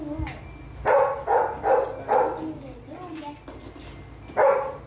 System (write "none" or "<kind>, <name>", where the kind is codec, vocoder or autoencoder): none